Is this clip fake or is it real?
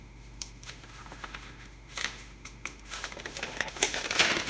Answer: fake